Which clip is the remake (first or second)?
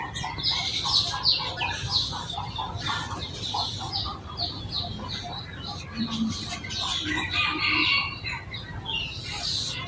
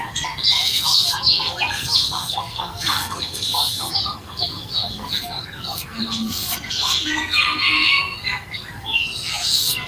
second